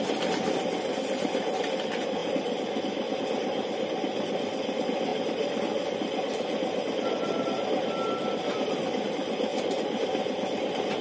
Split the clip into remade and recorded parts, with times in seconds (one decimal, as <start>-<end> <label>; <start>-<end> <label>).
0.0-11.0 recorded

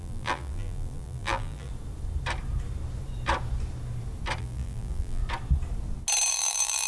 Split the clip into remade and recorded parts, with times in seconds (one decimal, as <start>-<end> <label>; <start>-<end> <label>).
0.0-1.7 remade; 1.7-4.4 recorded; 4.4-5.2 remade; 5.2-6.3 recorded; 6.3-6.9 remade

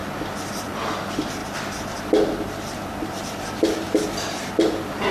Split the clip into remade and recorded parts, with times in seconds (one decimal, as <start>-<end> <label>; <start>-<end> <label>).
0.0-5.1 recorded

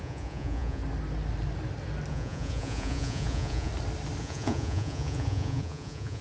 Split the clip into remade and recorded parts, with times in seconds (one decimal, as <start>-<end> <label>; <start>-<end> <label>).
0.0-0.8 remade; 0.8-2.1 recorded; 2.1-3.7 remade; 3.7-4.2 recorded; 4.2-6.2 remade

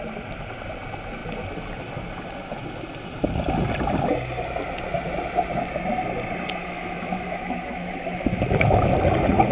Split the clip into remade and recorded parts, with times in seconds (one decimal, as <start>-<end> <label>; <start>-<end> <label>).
0.0-6.6 recorded; 6.6-8.9 remade; 8.9-9.5 recorded

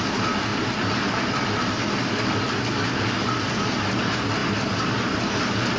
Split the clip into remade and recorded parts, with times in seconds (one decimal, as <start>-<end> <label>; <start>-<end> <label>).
0.0-0.5 recorded; 0.5-3.5 remade; 3.5-4.4 recorded; 4.4-5.2 remade; 5.2-5.8 recorded

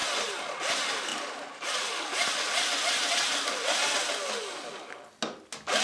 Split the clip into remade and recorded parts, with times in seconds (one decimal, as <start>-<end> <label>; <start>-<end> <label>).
0.0-5.8 recorded